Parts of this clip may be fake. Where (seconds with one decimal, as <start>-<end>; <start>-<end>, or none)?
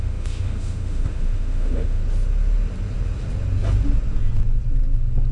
0.0-2.0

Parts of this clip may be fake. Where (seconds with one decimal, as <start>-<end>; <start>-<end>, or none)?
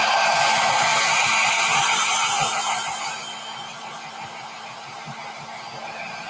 none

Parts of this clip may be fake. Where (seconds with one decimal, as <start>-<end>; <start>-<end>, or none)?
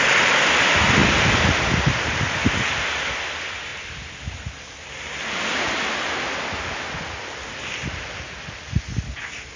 none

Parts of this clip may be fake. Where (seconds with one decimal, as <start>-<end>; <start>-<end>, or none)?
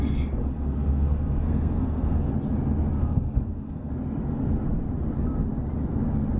0.4-2.3; 3.0-3.9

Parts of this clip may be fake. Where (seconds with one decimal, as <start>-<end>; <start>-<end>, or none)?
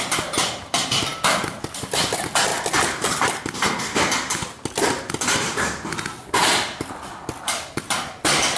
none